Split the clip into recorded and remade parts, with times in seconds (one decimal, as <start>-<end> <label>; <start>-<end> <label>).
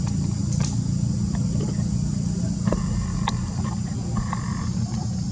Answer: 0.0-5.3 recorded